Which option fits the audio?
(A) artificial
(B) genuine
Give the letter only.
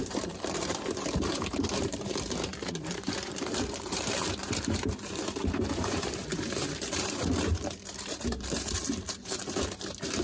A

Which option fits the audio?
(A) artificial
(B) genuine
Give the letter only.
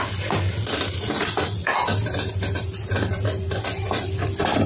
B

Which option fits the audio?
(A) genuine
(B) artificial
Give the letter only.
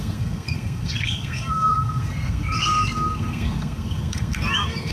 B